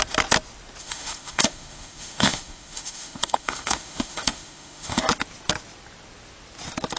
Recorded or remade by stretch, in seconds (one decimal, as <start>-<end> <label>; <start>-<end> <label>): 0.0-0.8 recorded; 0.8-5.0 remade; 5.0-7.0 recorded